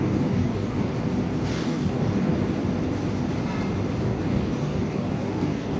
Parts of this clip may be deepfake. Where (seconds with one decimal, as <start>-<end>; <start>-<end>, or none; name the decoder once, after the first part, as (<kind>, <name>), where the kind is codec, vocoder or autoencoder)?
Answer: 0.0-0.9 (codec, DAC); 1.5-2.3; 4.0-5.8